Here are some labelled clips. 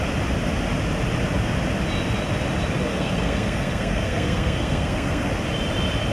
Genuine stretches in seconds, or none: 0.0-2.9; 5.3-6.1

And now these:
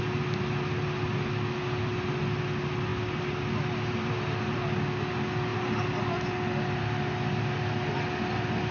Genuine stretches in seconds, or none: 0.0-8.7

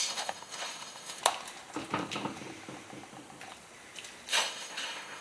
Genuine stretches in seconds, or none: 1.2-4.3